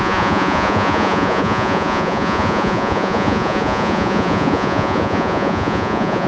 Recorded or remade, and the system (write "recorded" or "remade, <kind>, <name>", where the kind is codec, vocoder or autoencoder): remade, vocoder, Vocos